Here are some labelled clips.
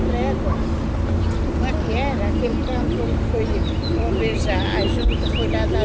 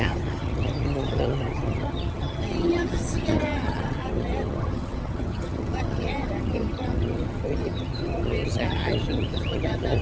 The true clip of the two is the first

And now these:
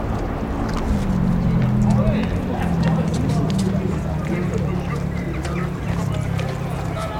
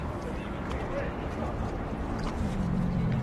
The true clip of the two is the first